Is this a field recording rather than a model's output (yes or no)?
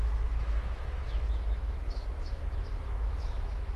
no